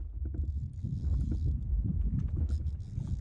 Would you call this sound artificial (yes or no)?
no